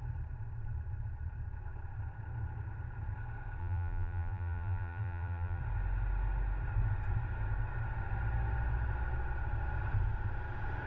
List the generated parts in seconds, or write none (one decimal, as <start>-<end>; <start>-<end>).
3.6-5.6